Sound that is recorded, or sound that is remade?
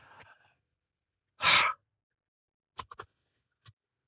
recorded